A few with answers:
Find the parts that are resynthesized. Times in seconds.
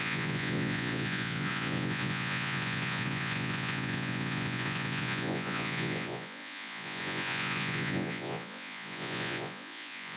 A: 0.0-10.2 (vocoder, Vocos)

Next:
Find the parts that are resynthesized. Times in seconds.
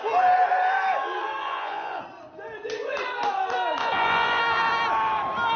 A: 1.4-2.0 (vocoder, Vocos); 3.8-4.4